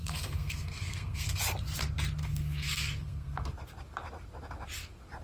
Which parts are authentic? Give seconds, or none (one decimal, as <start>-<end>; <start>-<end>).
1.4-2.2; 3.5-5.2